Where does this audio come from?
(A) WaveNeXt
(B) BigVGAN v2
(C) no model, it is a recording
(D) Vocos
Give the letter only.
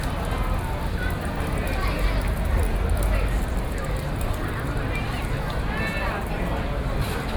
C